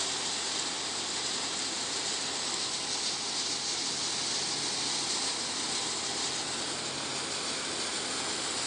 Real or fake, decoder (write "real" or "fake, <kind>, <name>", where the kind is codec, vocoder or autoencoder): real